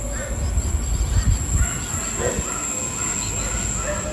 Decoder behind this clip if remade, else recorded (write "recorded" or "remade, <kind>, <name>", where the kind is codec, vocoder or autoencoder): recorded